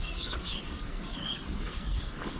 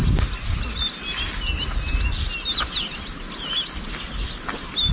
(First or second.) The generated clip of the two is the first